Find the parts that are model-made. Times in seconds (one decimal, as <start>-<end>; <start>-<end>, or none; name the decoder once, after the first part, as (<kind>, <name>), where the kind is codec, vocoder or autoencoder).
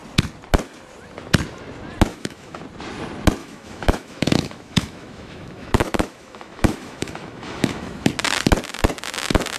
2.1-2.6 (autoencoder, DAC-VAE); 3.4-8.1